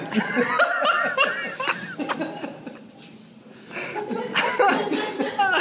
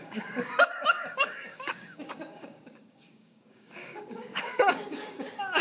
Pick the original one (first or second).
first